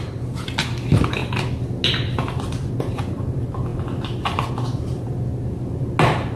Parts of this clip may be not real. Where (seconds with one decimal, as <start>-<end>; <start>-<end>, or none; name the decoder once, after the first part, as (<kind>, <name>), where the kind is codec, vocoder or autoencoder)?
none